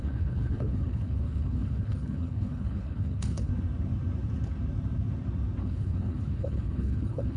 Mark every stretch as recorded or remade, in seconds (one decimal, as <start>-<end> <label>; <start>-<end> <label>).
0.0-3.5 remade; 3.5-5.6 recorded; 5.6-7.4 remade